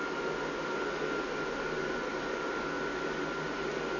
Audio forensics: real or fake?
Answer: real